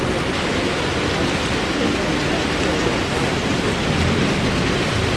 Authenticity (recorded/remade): recorded